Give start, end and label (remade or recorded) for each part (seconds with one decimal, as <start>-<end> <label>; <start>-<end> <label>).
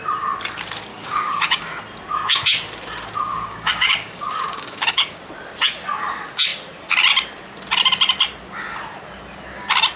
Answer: 0.0-0.9 recorded; 0.9-1.8 remade; 1.8-3.3 recorded; 3.3-5.2 remade; 5.2-10.0 recorded